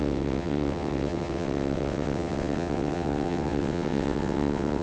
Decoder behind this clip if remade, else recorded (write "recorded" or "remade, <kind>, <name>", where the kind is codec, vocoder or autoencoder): remade, vocoder, WaveNeXt